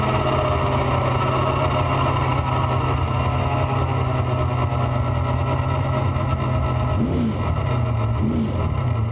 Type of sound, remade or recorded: recorded